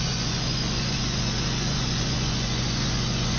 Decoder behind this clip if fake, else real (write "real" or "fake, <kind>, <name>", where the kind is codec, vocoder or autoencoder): fake, vocoder, Vocos